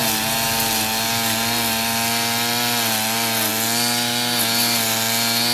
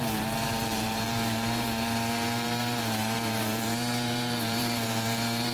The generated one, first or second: second